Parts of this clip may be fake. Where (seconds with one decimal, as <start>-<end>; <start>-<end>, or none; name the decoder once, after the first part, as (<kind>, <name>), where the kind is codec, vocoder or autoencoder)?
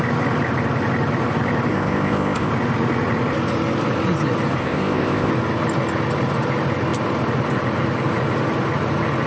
1.7-2.5 (codec, ZipCodec); 4.6-5.3